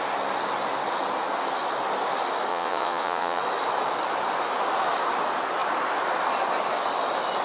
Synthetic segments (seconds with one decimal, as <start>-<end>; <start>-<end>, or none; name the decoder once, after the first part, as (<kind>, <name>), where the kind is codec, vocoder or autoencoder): 2.5-3.4 (vocoder, Vocos)